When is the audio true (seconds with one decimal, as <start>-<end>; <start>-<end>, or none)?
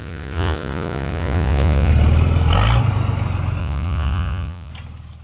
1.9-3.6; 4.7-5.2